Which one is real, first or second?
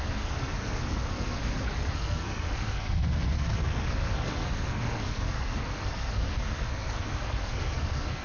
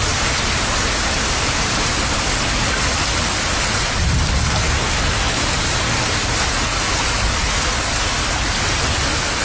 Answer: second